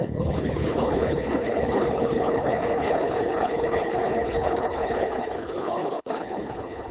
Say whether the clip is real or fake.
fake